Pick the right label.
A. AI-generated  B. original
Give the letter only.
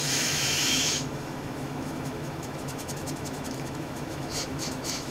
A